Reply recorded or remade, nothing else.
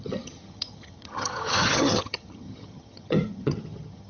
remade